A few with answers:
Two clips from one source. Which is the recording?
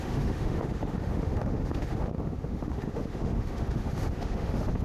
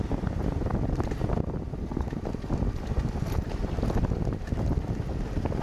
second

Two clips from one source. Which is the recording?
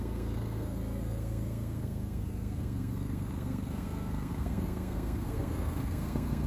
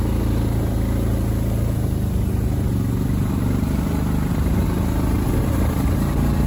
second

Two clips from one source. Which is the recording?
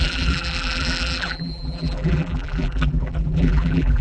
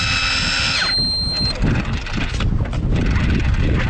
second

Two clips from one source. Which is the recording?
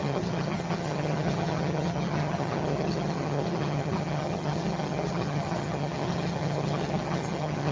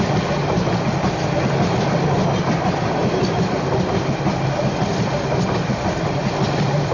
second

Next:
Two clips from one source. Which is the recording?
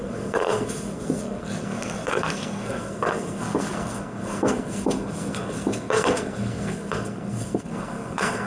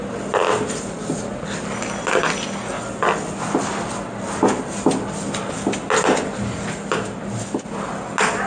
second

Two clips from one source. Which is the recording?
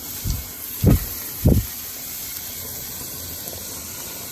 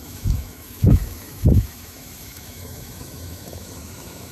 first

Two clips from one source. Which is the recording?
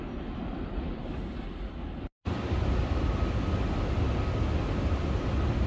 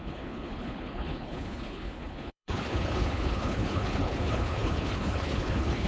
first